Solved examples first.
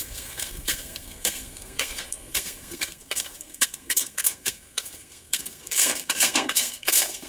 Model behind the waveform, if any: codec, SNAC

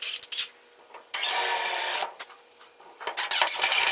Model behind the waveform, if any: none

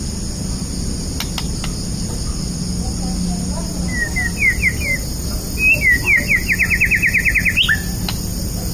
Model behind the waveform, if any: none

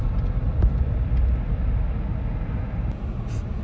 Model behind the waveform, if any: none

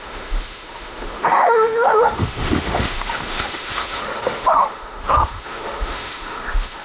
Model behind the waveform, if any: autoencoder, DAC-VAE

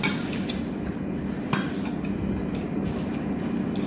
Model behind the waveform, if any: none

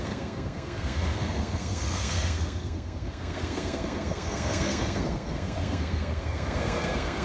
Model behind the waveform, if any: codec, SNAC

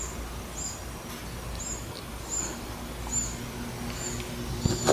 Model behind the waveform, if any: none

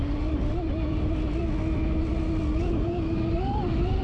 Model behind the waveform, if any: none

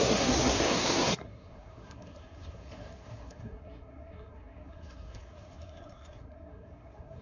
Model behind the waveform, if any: codec, SNAC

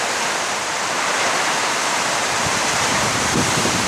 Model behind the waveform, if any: vocoder, BigVGAN v2